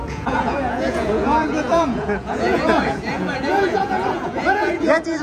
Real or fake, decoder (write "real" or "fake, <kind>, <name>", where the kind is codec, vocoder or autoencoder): fake, vocoder, Vocos